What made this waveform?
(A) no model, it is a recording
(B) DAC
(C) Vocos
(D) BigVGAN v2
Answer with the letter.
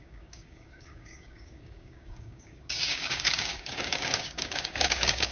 B